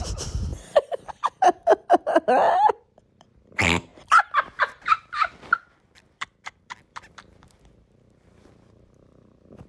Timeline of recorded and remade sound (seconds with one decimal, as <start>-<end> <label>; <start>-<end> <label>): 0.0-1.7 remade; 1.7-2.5 recorded; 2.5-3.9 remade; 3.9-5.6 recorded; 5.6-9.7 remade